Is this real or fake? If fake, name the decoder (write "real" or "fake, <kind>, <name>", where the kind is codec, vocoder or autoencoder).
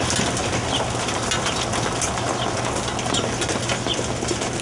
real